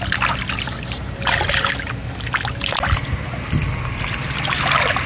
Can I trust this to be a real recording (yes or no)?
yes